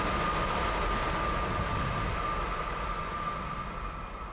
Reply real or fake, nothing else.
real